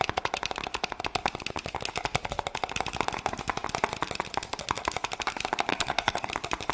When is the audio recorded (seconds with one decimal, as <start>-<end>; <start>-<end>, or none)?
0.0-5.7; 6.3-6.7